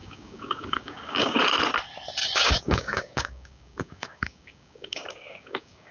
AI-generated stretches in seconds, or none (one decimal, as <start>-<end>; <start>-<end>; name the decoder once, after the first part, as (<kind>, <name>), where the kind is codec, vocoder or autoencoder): 0.0-1.4 (codec, DAC); 2.2-5.9